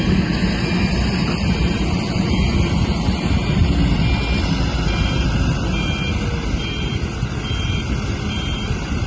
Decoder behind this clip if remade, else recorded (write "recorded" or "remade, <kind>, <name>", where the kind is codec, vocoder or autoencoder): recorded